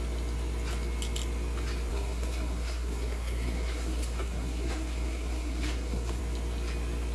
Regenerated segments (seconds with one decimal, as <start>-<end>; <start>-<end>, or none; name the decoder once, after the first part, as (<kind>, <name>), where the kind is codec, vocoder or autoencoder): 1.9-6.2 (codec, SNAC)